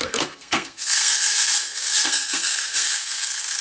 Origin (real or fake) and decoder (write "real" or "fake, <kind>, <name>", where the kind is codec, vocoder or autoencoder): fake, codec, SNAC